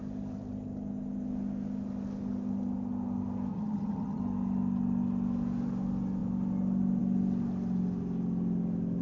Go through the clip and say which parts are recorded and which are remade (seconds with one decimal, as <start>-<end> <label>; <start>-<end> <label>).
0.0-3.5 recorded; 3.5-4.2 remade; 4.2-9.0 recorded